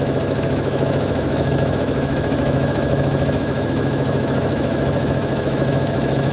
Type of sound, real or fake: fake